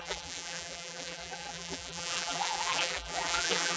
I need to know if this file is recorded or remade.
remade